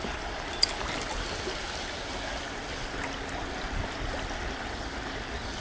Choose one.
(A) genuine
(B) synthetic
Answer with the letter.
A